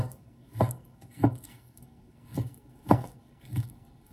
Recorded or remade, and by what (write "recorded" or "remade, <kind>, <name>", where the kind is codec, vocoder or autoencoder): remade, codec, SNAC